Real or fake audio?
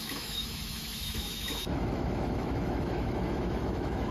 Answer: fake